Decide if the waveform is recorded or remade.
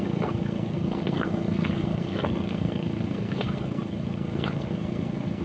remade